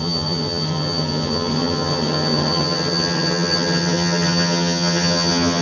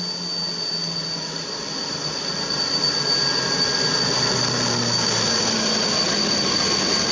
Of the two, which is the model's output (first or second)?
first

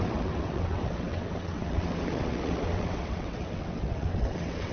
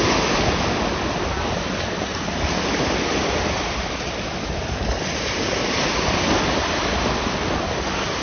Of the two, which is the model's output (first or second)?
first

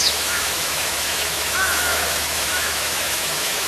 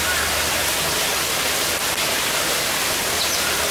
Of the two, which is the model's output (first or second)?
first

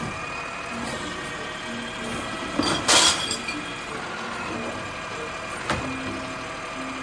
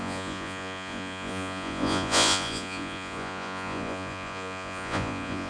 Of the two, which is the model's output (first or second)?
second